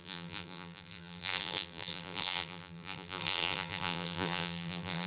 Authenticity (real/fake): fake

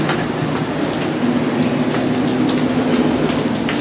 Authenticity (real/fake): real